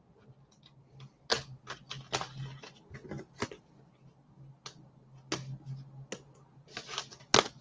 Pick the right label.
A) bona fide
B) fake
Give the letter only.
A